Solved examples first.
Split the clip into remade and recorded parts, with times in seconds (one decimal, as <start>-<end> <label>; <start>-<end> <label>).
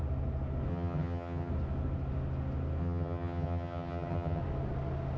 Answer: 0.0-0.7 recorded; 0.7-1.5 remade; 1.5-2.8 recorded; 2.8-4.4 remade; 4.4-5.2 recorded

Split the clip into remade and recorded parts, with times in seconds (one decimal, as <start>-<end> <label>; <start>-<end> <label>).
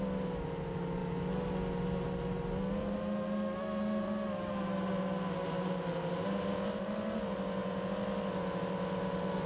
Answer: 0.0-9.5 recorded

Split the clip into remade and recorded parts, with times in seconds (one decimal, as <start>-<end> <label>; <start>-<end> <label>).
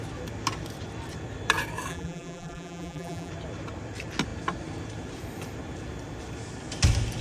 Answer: 0.0-1.9 recorded; 1.9-3.3 remade; 3.3-7.2 recorded